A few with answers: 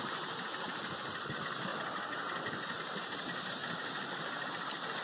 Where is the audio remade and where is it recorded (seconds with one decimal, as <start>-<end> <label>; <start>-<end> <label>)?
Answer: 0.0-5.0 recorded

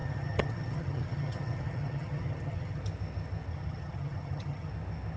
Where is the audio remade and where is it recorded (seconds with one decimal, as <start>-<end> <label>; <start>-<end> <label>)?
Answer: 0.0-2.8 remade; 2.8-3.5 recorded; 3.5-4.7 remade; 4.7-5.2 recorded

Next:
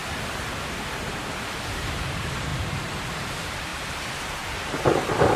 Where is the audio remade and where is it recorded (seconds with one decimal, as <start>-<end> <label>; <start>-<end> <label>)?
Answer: 0.0-1.1 recorded; 1.1-5.4 remade

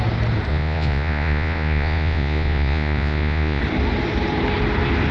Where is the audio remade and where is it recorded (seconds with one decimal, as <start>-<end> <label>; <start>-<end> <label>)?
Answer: 0.0-0.5 recorded; 0.5-3.6 remade; 3.6-5.1 recorded

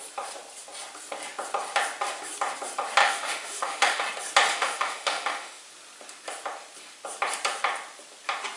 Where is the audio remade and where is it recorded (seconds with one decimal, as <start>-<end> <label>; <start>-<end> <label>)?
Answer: 0.0-3.0 recorded; 3.0-4.0 remade; 4.0-4.5 recorded; 4.5-5.6 remade; 5.6-8.6 recorded

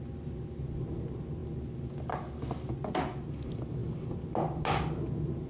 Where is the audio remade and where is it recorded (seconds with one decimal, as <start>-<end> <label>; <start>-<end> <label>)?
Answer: 0.0-5.5 recorded

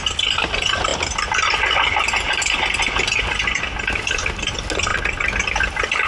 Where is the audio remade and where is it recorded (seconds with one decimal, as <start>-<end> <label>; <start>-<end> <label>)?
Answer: 0.0-6.1 recorded

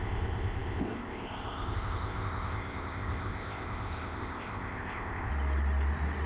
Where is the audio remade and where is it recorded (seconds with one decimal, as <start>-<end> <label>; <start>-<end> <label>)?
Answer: 0.0-5.3 remade; 5.3-6.3 recorded